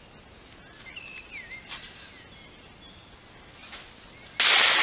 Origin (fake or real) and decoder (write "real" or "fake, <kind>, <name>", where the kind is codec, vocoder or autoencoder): real